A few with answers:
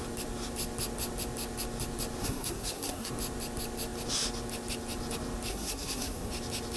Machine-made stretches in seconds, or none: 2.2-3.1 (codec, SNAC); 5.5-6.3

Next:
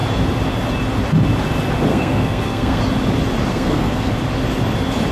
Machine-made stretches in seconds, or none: 1.9-2.8 (codec, SNAC); 3.5-4.1

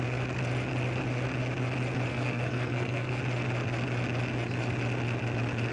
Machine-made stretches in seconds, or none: 2.1-3.2 (codec, SNAC)

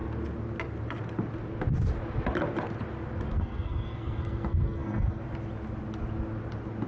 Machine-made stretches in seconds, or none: 3.3-5.2 (codec, SNAC)

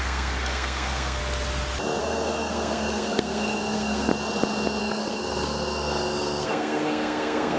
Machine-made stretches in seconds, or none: 0.0-1.2 (codec, SNAC); 2.0-4.1; 4.8-7.6

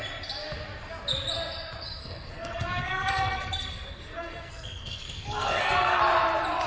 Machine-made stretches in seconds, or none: 2.0-6.0 (codec, SNAC)